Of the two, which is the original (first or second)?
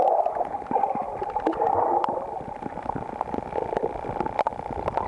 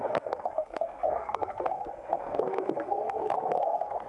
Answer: first